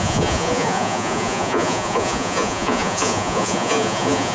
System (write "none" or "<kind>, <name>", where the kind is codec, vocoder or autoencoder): vocoder, Vocos